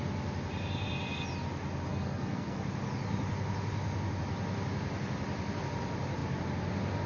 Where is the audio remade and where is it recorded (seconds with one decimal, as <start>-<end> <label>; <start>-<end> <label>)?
0.0-1.9 recorded; 1.9-2.6 remade; 2.6-7.1 recorded